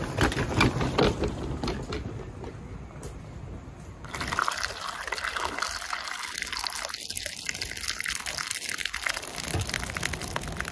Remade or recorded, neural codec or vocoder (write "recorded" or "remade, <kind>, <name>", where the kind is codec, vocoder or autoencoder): recorded